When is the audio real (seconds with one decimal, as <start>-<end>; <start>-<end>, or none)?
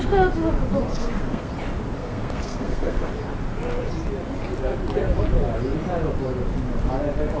0.0-0.9; 1.5-2.0; 3.1-7.4